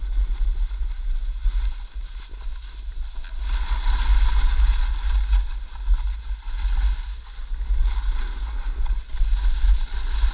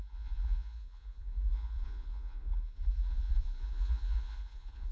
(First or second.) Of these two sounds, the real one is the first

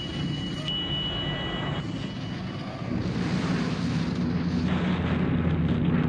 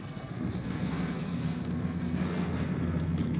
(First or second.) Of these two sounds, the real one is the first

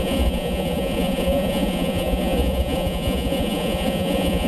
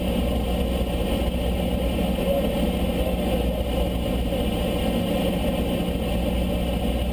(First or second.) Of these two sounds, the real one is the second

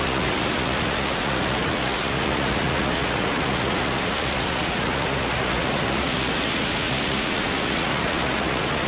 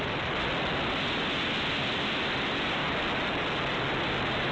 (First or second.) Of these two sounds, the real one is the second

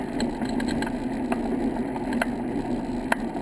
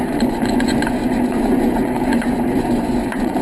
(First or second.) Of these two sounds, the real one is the first